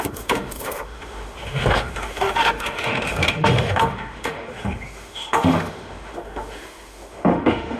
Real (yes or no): no